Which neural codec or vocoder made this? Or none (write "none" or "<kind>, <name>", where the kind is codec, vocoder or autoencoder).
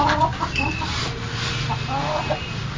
none